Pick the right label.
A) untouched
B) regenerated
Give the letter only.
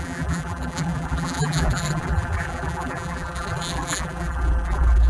B